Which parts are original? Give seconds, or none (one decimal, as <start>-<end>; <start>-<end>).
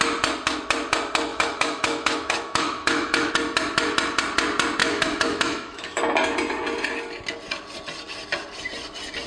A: 0.0-1.3; 3.3-4.8; 6.0-9.3